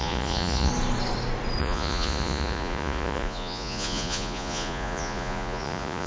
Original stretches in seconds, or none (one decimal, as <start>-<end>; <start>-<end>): 0.7-1.6